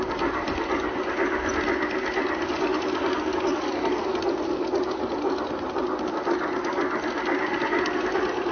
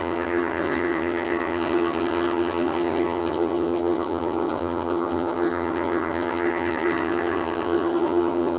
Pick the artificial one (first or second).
second